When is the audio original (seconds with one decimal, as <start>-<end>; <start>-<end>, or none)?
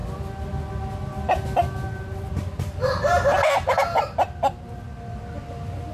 0.0-5.9